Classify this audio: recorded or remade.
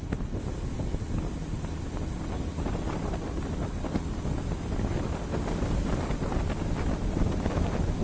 recorded